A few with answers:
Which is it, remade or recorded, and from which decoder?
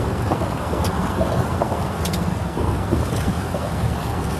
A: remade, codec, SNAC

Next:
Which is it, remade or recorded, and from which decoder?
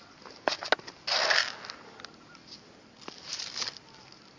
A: recorded